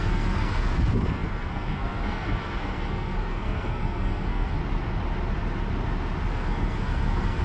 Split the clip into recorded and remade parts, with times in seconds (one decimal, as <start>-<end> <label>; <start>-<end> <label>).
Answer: 0.0-4.6 remade; 4.6-6.3 recorded; 6.3-7.4 remade